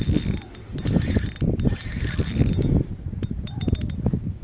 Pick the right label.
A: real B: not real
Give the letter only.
A